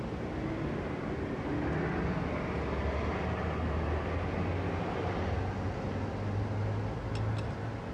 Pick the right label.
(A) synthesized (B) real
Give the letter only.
B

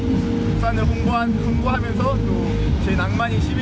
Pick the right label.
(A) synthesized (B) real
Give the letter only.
B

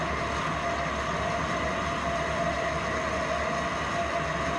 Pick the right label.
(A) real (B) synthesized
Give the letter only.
A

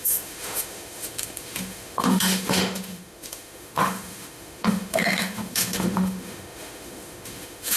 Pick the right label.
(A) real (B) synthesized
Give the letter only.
B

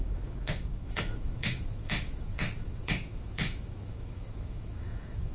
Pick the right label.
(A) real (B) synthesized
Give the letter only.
B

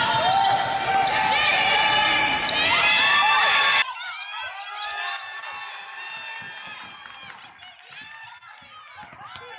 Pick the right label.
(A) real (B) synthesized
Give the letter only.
A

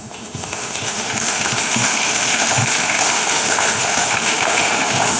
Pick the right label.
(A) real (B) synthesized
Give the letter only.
B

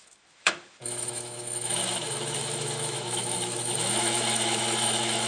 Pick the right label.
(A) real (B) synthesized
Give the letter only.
B